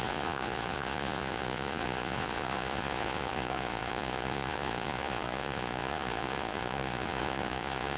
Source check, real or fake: fake